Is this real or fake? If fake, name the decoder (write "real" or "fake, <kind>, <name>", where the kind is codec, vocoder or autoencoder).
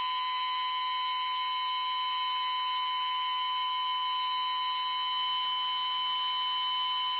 real